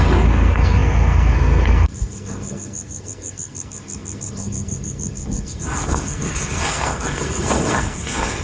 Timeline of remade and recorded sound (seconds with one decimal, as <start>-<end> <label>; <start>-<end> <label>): 0.0-8.4 remade